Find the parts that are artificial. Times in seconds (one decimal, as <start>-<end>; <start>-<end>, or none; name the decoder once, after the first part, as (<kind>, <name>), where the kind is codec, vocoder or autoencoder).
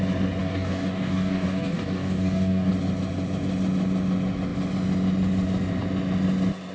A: 0.4-2.7 (codec, DAC)